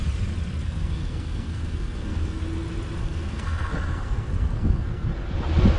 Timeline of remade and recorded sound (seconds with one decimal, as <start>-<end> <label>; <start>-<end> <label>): 0.0-0.6 recorded; 0.6-2.4 remade; 2.4-3.0 recorded; 3.0-5.1 remade; 5.1-5.8 recorded